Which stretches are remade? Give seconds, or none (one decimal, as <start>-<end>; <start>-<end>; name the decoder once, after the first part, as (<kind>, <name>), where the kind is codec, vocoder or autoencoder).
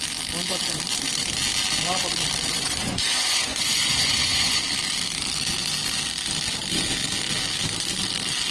2.5-4.6 (vocoder, Vocos)